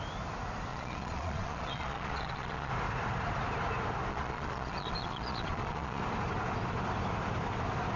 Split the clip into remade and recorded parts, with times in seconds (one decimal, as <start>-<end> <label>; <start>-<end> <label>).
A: 0.0-0.7 recorded; 0.7-2.7 remade; 2.7-4.1 recorded; 4.1-6.0 remade; 6.0-8.0 recorded